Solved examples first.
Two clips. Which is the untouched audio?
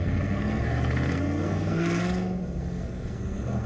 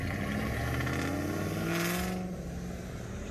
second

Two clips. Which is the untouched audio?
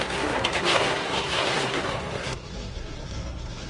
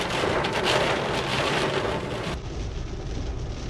second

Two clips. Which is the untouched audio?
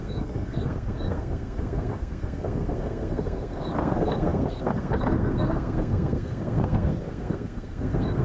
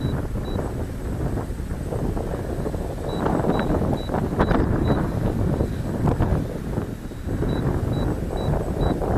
second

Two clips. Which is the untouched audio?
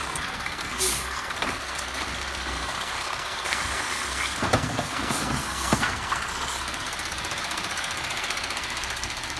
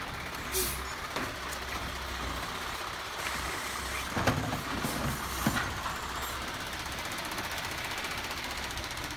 second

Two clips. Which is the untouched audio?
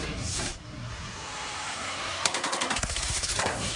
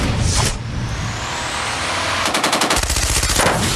second